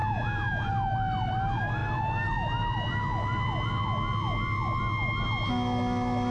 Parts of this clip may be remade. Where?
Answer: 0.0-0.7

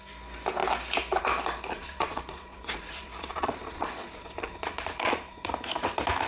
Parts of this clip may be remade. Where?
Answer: 1.7-5.5